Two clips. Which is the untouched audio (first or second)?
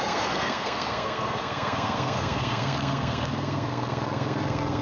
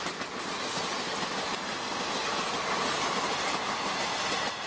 second